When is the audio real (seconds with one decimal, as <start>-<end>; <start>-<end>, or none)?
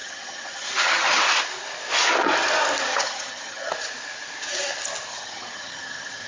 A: 1.2-2.9; 3.7-5.1